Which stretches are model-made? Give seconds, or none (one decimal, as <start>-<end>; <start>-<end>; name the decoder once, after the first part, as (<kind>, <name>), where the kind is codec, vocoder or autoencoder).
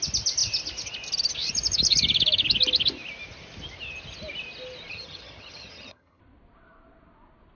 4.9-6.2 (vocoder, HiFi-GAN)